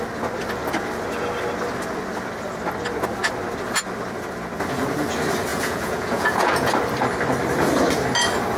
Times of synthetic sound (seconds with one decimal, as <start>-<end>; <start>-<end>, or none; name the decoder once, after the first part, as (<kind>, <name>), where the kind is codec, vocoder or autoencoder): 5.5-6.7 (vocoder, Vocos)